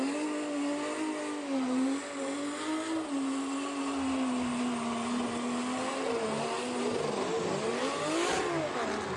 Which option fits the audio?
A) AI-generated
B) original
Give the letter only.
B